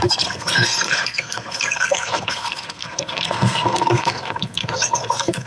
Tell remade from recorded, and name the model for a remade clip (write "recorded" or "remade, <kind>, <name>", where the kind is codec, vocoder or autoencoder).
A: remade, codec, SNAC